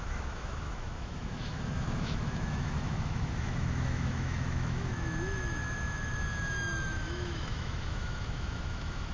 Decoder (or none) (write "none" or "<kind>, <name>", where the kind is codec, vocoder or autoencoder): autoencoder, DAC-VAE